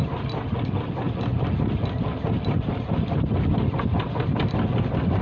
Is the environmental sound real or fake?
real